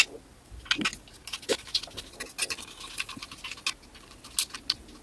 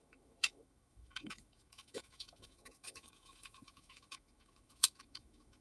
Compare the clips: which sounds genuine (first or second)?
first